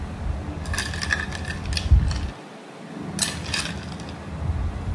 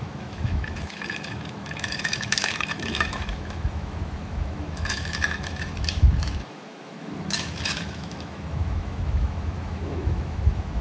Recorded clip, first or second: first